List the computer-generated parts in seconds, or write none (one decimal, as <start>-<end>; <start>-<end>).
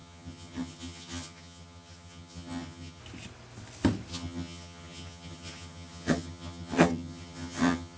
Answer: 0.0-3.0; 4.1-8.0